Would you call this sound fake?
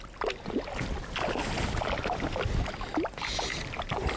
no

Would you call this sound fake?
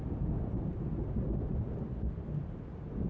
no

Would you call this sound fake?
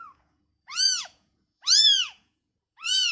yes